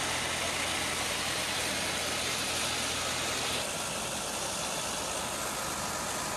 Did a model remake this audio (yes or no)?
no